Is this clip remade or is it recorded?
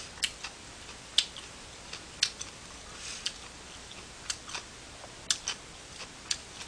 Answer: recorded